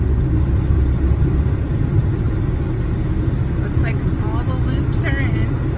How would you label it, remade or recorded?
recorded